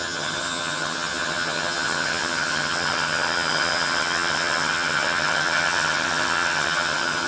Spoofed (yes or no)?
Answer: yes